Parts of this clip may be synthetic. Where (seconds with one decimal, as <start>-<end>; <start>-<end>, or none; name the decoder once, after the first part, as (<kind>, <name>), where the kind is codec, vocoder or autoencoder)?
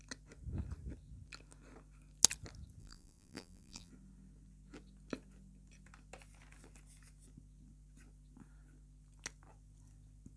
2.8-3.9 (vocoder, BigVGAN v2)